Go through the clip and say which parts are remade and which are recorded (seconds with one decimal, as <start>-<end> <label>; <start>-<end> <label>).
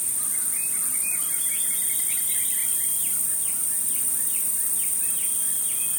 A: 0.0-6.0 recorded